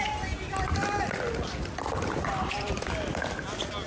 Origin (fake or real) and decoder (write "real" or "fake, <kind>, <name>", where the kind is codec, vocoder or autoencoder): real